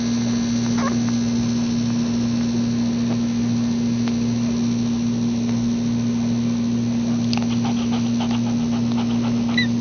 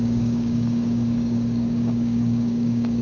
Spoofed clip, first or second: second